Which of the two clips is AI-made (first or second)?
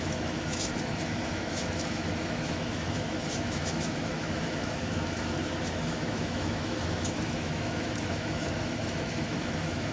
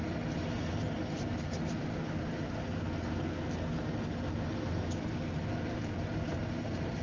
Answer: first